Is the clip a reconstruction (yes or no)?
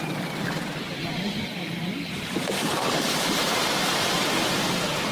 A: no